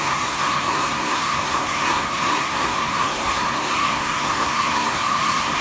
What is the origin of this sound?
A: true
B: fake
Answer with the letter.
B